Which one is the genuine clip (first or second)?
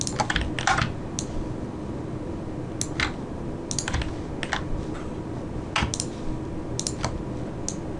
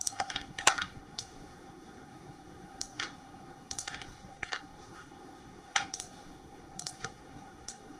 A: first